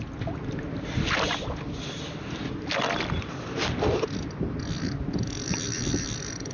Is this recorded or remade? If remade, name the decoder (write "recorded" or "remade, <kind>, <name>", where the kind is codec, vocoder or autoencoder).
recorded